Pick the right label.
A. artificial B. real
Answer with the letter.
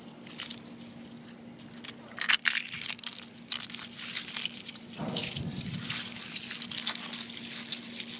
B